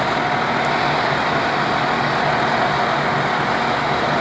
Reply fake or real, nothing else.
real